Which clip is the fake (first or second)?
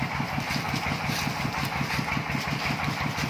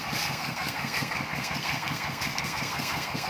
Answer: second